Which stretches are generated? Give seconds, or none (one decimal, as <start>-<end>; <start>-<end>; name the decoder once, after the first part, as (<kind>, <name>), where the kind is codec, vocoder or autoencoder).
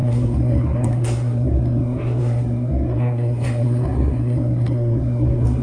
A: 0.0-5.6 (codec, SNAC)